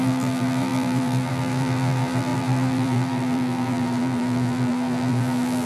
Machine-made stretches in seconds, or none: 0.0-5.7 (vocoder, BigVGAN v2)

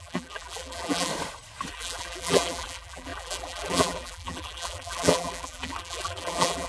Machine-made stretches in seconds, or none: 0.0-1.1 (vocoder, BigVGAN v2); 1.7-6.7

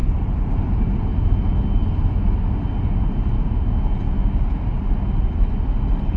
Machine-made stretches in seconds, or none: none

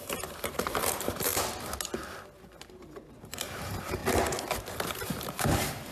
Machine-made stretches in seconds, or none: 0.0-1.3 (vocoder, BigVGAN v2); 2.7-4.0; 4.9-5.9